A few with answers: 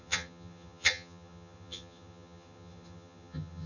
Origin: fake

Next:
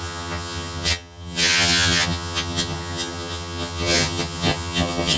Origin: fake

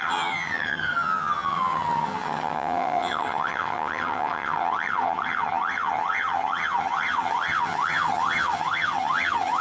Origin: fake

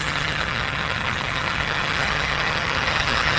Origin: fake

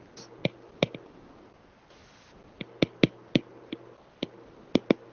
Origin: real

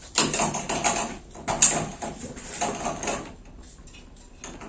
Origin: real